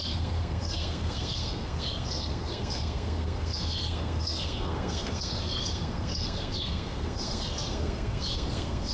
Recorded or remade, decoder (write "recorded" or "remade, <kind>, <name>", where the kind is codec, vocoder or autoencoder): remade, codec, SNAC